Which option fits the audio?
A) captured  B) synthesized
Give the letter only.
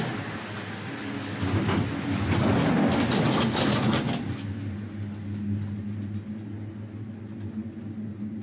A